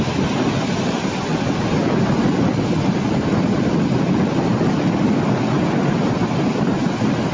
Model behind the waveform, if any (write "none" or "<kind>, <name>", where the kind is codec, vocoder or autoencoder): none